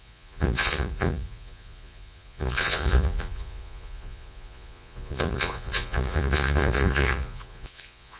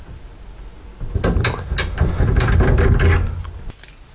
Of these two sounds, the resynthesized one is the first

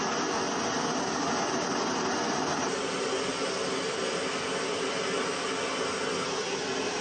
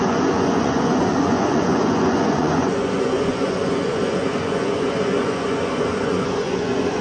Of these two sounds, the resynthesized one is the second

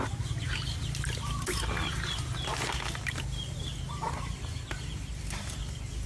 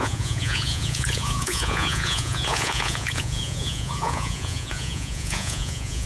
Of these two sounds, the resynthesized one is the second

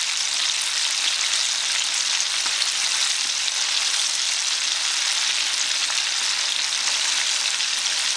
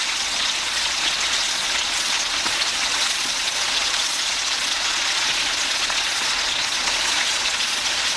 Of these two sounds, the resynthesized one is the second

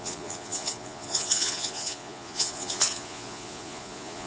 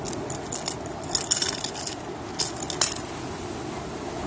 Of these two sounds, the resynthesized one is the first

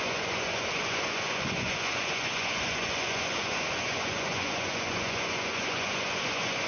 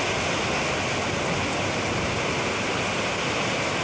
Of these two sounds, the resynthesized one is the first